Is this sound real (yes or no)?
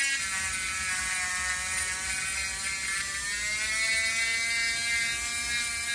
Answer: yes